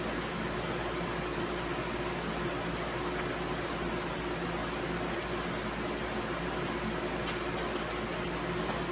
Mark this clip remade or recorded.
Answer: recorded